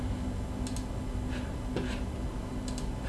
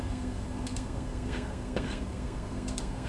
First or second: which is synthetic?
second